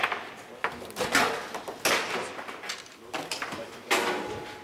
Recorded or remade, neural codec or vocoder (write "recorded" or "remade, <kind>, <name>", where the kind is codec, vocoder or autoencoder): recorded